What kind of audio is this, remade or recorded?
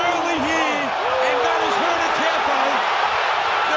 recorded